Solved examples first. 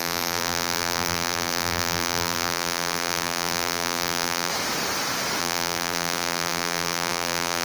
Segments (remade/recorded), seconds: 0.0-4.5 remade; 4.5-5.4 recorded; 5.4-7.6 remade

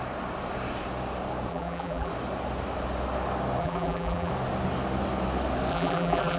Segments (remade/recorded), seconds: 0.0-1.5 recorded; 1.5-2.1 remade; 2.1-3.6 recorded; 3.6-4.3 remade; 4.3-5.7 recorded; 5.7-6.4 remade

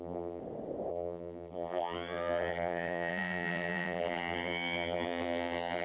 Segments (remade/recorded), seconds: 0.0-0.4 remade; 0.4-0.9 recorded; 0.9-5.8 remade

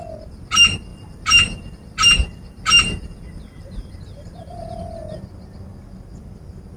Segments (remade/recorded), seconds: 0.0-0.9 recorded; 0.9-5.0 remade; 5.0-6.8 recorded